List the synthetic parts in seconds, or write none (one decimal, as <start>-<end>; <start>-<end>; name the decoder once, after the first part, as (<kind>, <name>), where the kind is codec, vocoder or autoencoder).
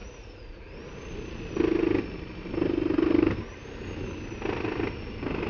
0.0-0.6 (vocoder, Vocos)